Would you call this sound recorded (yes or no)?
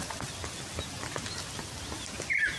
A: yes